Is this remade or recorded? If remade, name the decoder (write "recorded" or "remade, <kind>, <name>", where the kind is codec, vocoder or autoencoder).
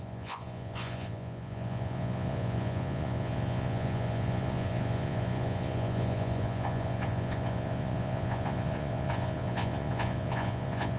remade, vocoder, Vocos